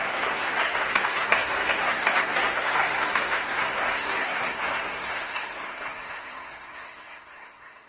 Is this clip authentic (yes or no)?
no